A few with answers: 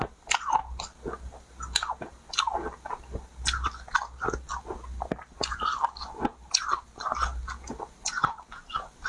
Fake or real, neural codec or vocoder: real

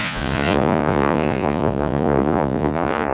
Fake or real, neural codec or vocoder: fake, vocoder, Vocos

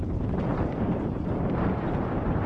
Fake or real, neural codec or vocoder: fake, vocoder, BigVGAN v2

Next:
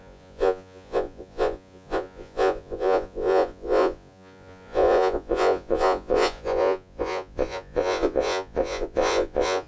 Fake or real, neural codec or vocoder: fake, vocoder, Vocos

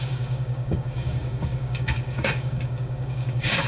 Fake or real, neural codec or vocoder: fake, codec, DAC